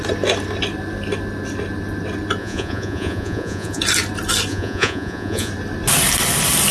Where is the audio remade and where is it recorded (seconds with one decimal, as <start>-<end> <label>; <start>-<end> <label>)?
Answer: 0.0-2.4 recorded; 2.4-3.8 remade; 3.8-4.5 recorded; 4.5-5.5 remade; 5.5-6.7 recorded